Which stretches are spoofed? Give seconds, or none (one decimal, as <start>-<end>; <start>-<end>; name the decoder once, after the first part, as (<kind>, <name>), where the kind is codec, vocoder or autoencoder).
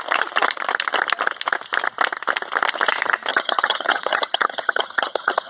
3.3-5.5 (vocoder, HiFi-GAN)